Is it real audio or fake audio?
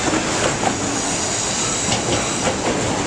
real